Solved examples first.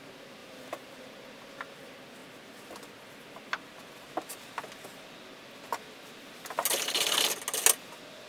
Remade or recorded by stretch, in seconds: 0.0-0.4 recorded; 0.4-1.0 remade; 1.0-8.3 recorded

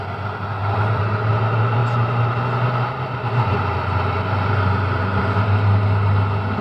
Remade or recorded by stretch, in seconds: 0.0-0.6 recorded; 0.6-1.3 remade; 1.3-1.8 recorded; 1.8-5.2 remade; 5.2-6.6 recorded

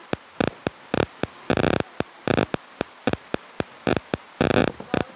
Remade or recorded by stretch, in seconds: 0.0-5.2 recorded

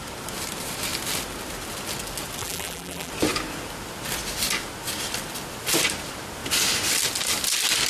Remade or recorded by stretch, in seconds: 0.0-2.4 recorded; 2.4-3.1 remade; 3.1-7.9 recorded

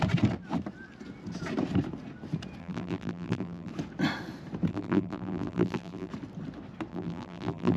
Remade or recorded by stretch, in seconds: 0.0-2.6 recorded; 2.6-3.7 remade; 3.7-4.7 recorded; 4.7-6.1 remade; 6.1-6.9 recorded; 6.9-7.8 remade

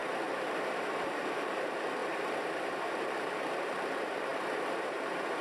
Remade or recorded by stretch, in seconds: 0.0-1.0 recorded; 1.0-5.4 remade

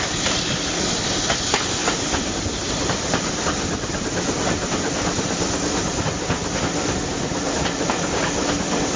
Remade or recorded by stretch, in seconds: 0.0-1.8 recorded; 1.8-2.3 remade; 2.3-9.0 recorded

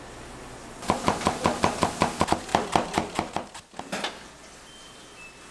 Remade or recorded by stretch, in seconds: 0.0-2.5 recorded; 2.5-3.3 remade; 3.3-5.5 recorded